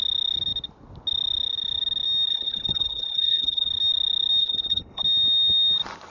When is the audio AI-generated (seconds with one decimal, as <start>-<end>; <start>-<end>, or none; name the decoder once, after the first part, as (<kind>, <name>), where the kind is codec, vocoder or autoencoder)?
2.3-3.7 (codec, HILCodec); 4.4-5.0